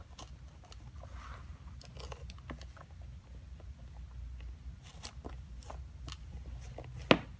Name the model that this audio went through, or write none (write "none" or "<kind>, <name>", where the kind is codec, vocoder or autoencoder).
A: none